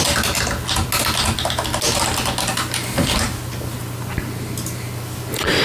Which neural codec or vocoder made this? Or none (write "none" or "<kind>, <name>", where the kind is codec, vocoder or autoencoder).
none